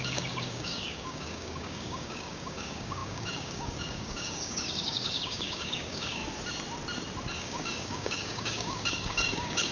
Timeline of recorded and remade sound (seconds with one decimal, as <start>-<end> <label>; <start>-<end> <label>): 0.0-6.2 remade; 6.2-7.4 recorded; 7.4-9.7 remade